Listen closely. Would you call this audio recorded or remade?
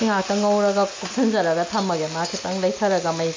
recorded